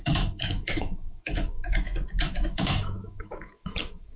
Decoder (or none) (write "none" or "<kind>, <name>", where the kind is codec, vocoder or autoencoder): autoencoder, DAC-VAE